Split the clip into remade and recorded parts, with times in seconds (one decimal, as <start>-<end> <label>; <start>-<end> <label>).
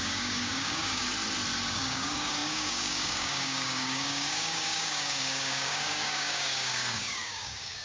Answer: 0.0-1.0 remade; 1.0-1.7 recorded; 1.7-7.8 remade